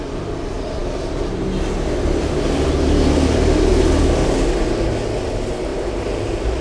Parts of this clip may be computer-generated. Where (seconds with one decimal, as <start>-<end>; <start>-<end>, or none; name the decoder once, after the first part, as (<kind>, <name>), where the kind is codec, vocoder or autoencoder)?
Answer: 5.7-6.6 (vocoder, BigVGAN v2)